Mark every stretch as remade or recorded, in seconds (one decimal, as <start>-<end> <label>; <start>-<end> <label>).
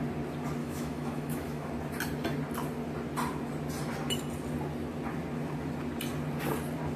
0.0-0.6 recorded; 0.6-1.7 remade; 1.7-7.0 recorded